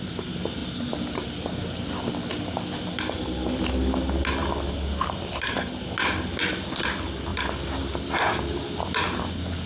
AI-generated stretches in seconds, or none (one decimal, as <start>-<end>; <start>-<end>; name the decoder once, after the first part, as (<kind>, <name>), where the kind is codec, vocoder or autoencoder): none